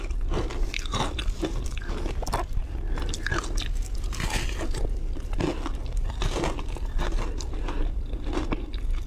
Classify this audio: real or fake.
real